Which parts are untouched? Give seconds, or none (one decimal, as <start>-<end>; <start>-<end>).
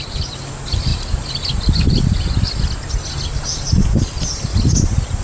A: 0.0-5.2